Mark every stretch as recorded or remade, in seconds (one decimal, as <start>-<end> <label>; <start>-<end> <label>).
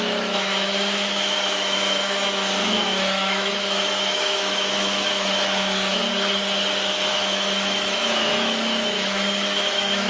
0.0-6.0 remade; 6.0-7.1 recorded; 7.1-10.1 remade